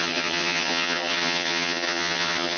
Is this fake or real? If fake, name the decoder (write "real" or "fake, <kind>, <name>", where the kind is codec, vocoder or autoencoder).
fake, vocoder, HiFi-GAN